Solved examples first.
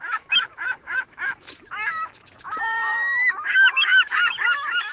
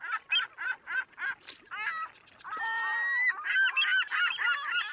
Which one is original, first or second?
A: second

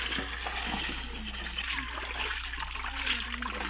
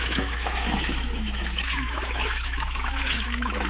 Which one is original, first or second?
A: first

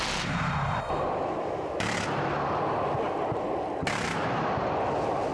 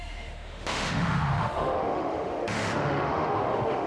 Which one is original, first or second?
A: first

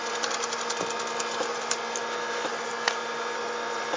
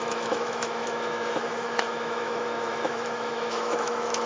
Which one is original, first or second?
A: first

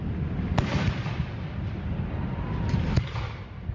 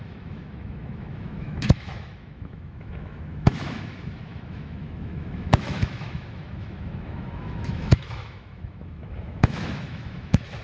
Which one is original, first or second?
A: first